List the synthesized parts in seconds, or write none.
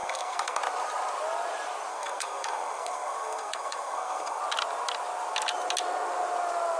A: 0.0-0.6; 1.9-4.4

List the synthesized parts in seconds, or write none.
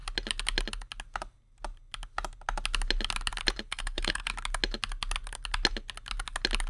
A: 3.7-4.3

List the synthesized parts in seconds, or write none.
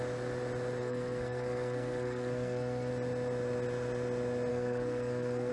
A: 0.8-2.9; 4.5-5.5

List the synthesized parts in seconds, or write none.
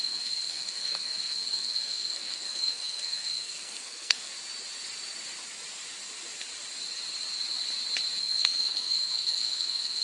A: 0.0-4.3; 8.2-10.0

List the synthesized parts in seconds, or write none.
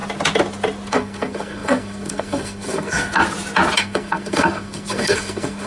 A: 0.9-3.2; 3.8-5.7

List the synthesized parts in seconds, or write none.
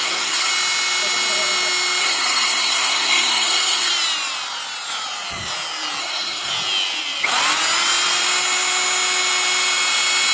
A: 0.0-0.5; 2.0-3.9; 6.0-6.5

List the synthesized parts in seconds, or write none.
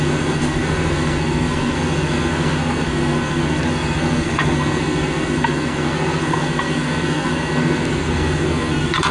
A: 0.0-9.1